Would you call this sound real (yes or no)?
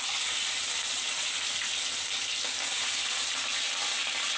yes